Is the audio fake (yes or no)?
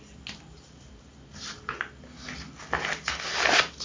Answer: no